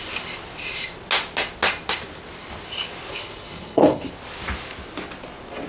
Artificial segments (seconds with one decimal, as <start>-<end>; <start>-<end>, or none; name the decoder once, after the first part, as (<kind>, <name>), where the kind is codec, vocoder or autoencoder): 3.1-4.1 (codec, HILCodec)